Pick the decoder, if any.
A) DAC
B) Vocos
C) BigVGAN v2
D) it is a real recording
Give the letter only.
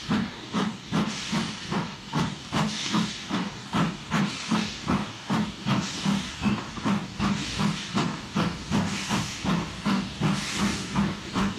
A